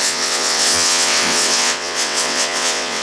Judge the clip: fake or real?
fake